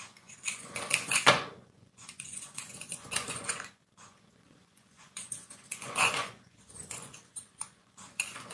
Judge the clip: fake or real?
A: fake